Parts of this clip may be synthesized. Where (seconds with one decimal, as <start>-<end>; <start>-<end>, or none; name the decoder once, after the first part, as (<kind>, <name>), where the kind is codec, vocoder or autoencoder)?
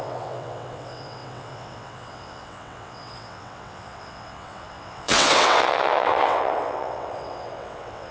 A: 0.0-8.1 (vocoder, WaveNeXt)